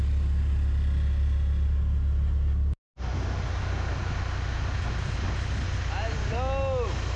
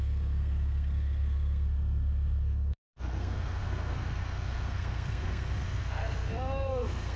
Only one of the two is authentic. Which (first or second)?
first